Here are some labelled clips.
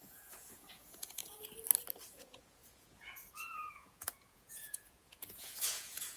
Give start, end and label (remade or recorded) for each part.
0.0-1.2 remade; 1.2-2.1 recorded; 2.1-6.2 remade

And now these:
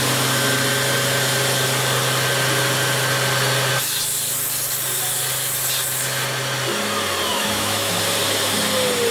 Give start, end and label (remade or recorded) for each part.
0.0-7.3 recorded; 7.3-8.0 remade; 8.0-9.1 recorded

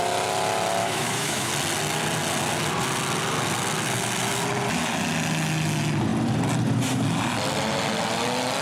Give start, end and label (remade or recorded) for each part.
0.0-0.8 recorded; 0.8-1.5 remade; 1.5-8.6 recorded

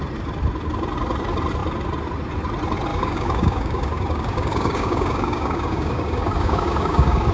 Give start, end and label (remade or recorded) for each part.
0.0-2.9 recorded; 2.9-7.3 remade